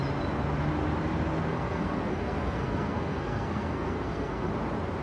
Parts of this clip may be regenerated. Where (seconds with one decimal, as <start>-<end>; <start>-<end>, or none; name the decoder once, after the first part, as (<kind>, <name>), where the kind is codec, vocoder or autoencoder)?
1.5-4.5 (codec, SNAC)